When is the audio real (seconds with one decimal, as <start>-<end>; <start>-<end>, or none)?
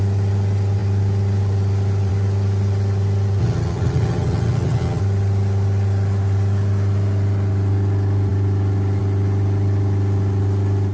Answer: 0.0-3.4; 5.0-10.9